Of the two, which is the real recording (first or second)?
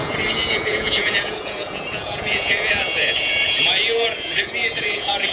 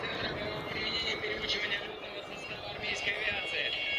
second